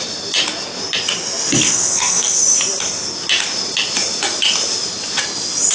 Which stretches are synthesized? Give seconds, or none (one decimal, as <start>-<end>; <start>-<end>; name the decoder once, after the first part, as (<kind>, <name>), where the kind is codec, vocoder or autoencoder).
1.7-2.4 (codec, SNAC)